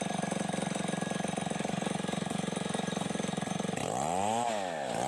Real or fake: real